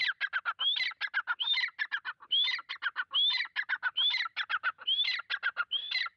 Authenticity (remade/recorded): recorded